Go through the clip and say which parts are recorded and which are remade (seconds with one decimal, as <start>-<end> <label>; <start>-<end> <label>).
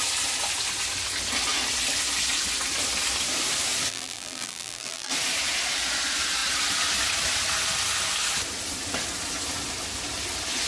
0.0-3.9 recorded; 3.9-5.1 remade; 5.1-10.7 recorded